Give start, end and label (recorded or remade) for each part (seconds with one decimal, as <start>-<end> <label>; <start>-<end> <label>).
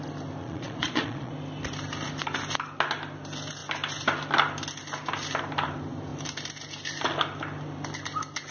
0.0-0.4 recorded; 0.4-1.3 remade; 1.3-8.5 recorded